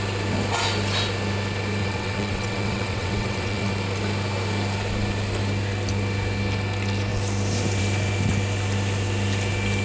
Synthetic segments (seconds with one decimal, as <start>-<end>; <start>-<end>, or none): 1.8-3.7